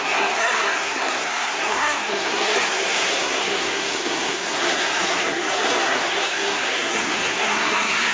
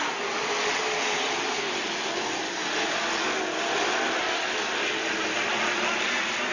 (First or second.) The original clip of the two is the second